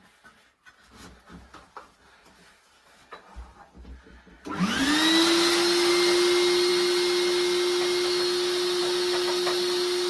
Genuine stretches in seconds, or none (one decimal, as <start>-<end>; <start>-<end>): 0.0-10.1